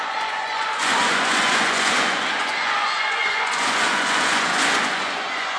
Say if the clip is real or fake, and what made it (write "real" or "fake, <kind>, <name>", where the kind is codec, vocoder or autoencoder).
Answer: fake, vocoder, Vocos